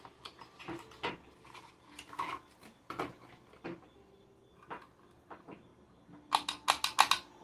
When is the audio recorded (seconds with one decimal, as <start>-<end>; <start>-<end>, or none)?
0.0-7.4